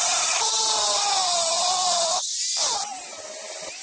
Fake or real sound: fake